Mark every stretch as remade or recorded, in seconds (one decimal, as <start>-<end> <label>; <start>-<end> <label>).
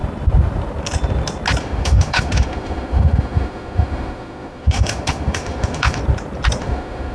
0.0-1.6 recorded; 1.6-6.0 remade; 6.0-6.6 recorded; 6.6-7.1 remade